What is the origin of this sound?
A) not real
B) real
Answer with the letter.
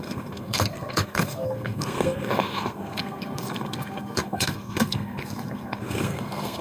A